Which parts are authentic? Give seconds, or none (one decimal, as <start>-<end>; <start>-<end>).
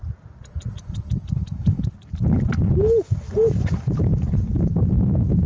0.0-1.4; 1.9-5.5